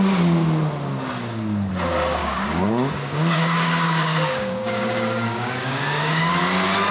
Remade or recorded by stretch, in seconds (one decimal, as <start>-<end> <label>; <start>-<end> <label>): 0.0-2.2 recorded; 2.2-6.3 remade; 6.3-6.9 recorded